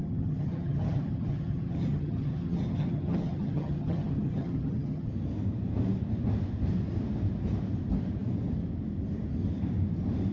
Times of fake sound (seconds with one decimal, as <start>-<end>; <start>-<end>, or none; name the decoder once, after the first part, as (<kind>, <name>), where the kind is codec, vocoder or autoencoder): 0.0-5.1 (vocoder, HiFi-GAN)